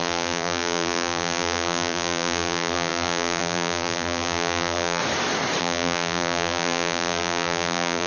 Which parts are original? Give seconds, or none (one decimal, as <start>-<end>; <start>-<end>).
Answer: 5.0-5.6